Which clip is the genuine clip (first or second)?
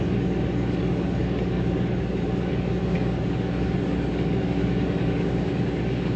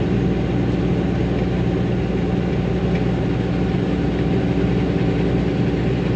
second